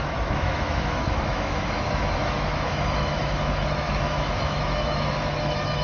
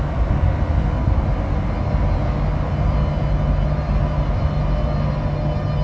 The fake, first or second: first